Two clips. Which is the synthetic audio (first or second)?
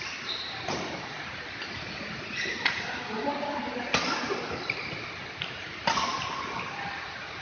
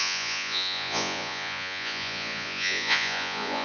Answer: second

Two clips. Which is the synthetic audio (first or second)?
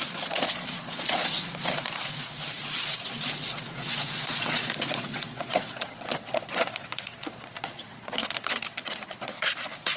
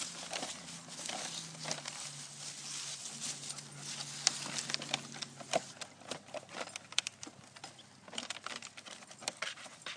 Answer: first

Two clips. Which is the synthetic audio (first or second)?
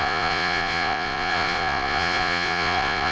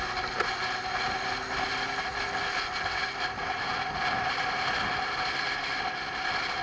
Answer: first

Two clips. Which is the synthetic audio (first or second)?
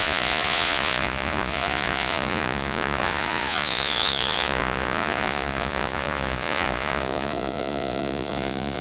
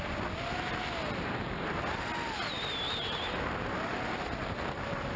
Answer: first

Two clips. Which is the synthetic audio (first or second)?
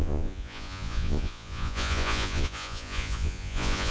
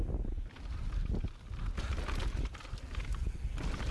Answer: first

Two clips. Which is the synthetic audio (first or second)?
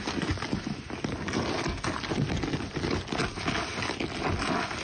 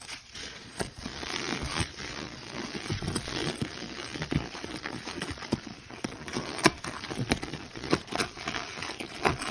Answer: second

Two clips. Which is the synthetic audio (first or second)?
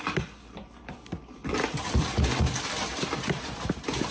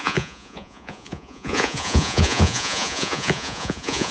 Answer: second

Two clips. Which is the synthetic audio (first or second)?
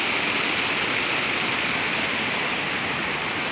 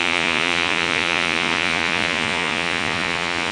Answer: second